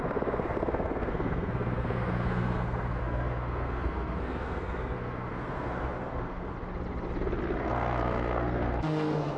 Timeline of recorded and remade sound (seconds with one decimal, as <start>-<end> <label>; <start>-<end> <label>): 0.0-6.5 remade; 6.5-7.6 recorded; 7.6-9.4 remade